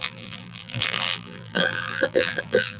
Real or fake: fake